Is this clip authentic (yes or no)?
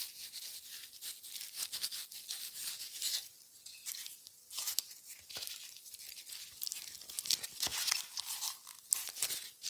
yes